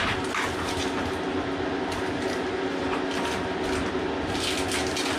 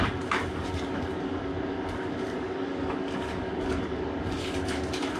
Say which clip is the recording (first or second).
first